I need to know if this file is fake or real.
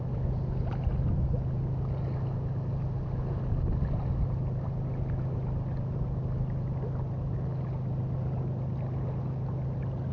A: real